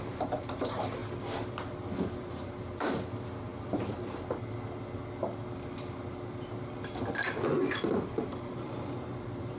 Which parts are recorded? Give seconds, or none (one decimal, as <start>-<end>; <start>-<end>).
1.0-2.2; 3.5-7.6